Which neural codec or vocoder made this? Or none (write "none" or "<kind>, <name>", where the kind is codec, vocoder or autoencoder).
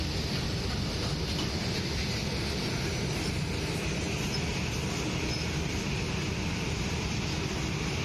none